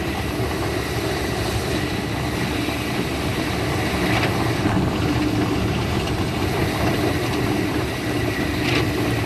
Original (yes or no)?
yes